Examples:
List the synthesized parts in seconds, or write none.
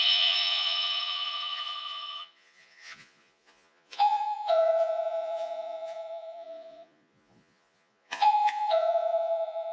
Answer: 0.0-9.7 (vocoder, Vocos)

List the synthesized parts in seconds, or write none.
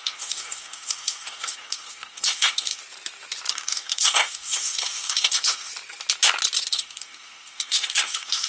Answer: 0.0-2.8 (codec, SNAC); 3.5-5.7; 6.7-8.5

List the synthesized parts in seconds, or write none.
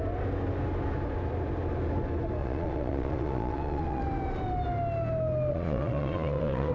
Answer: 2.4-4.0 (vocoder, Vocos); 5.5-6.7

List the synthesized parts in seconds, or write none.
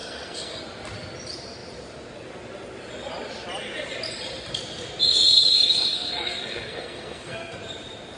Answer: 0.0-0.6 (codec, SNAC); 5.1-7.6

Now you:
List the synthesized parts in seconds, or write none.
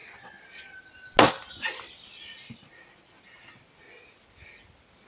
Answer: none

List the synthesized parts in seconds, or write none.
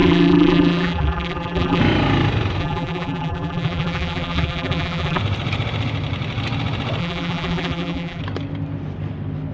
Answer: 0.0-1.8 (vocoder, BigVGAN v2); 2.6-5.2; 7.0-8.2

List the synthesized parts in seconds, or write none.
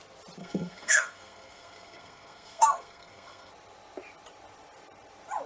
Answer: 0.4-3.5 (codec, SNAC)